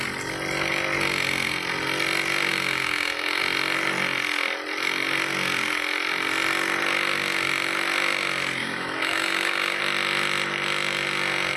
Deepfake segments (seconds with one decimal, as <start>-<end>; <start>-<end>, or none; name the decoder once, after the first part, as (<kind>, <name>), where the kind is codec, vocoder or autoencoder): 2.5-3.4 (autoencoder, DAC-VAE); 8.6-9.8

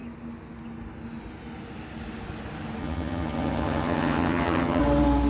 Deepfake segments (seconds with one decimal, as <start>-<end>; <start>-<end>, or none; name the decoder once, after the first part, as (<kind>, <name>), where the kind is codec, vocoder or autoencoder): 2.8-4.8 (vocoder, HiFi-GAN)

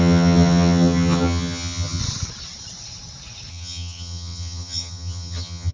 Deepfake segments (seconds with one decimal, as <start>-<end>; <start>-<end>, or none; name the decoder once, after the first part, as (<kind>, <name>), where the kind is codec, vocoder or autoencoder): 0.0-2.0 (vocoder, HiFi-GAN); 3.5-5.7

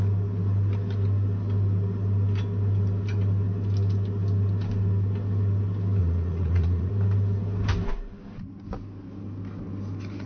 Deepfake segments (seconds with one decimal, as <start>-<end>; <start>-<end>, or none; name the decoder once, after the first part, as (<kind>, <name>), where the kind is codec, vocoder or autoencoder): 6.0-6.9 (vocoder, Vocos)

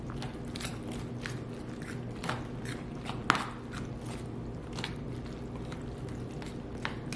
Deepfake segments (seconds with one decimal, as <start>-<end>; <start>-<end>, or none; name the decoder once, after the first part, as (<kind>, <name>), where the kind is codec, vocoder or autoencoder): none

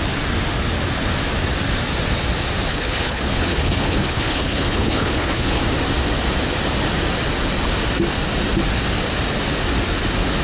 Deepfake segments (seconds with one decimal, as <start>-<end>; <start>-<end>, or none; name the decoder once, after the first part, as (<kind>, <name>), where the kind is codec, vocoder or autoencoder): 2.7-5.6 (codec, HILCodec)